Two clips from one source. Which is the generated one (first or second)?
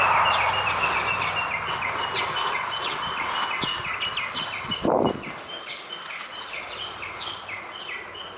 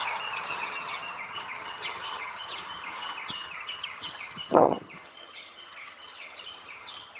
second